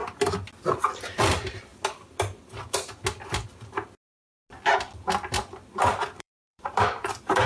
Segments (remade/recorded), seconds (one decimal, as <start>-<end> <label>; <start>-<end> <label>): 0.0-0.8 recorded; 0.8-1.7 remade; 1.7-6.2 recorded; 6.2-7.5 remade